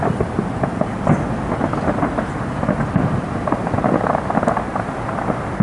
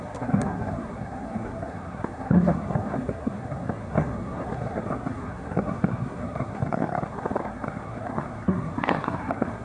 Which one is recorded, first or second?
first